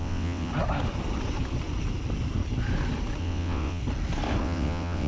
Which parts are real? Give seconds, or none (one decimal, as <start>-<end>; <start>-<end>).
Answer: 0.5-3.2; 3.8-4.4